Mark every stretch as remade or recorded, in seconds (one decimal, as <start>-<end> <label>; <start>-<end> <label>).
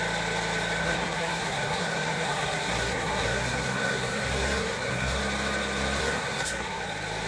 0.0-0.8 recorded; 0.8-5.2 remade; 5.2-6.0 recorded; 6.0-6.8 remade; 6.8-7.3 recorded